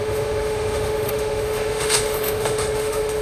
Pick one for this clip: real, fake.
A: fake